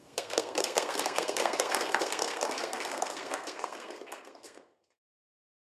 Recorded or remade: remade